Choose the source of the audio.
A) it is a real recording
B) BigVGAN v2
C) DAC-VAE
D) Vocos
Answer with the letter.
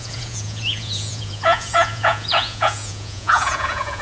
D